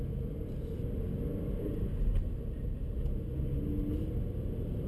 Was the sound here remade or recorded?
recorded